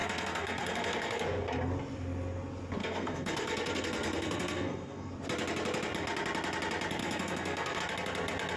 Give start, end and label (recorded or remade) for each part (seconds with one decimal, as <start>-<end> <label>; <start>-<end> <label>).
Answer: 0.0-1.2 remade; 1.2-2.8 recorded; 2.8-5.1 remade; 5.1-7.0 recorded; 7.0-7.8 remade; 7.8-8.6 recorded